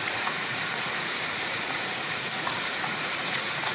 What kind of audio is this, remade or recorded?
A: remade